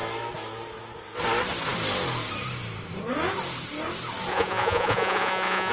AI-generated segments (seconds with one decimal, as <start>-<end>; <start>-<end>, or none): 4.3-5.7